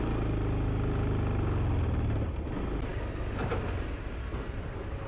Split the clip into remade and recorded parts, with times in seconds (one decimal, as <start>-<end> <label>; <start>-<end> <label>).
0.0-5.1 recorded